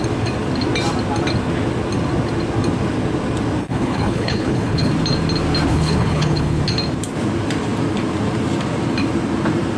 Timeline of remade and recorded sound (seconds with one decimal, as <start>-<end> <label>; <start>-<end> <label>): 0.0-3.6 recorded; 3.6-4.9 remade; 4.9-5.7 recorded; 5.7-6.6 remade; 6.6-9.8 recorded